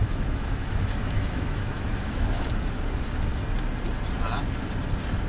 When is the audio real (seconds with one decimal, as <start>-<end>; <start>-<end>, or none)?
2.5-5.3